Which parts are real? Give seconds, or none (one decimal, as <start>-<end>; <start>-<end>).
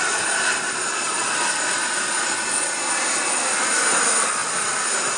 0.0-5.2